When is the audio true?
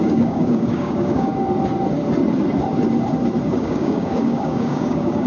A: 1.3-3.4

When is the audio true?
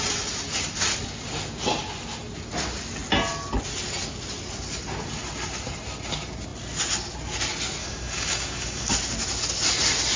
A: 0.0-7.8; 8.9-10.2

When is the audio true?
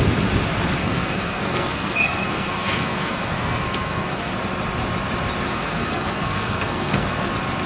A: 0.0-0.8; 4.3-5.5; 7.3-7.7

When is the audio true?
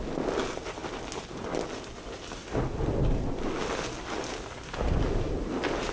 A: 0.0-5.9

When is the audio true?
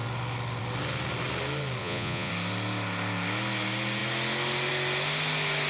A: 0.0-1.8; 2.3-5.7